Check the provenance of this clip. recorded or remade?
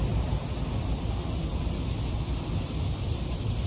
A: recorded